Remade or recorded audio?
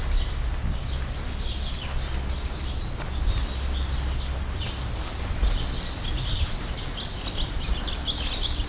recorded